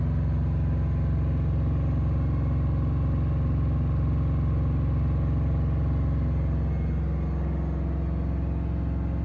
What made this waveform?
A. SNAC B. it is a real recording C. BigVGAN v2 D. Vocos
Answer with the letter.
B